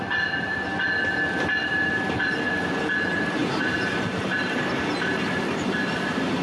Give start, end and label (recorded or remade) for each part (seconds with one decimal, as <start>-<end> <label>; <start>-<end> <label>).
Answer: 0.0-1.7 recorded; 1.7-2.3 remade; 2.3-3.4 recorded; 3.4-4.8 remade; 4.8-6.4 recorded